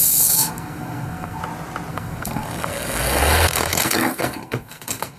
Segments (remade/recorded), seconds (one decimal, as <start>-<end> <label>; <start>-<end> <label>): 0.0-1.4 remade; 1.4-1.9 recorded; 1.9-5.2 remade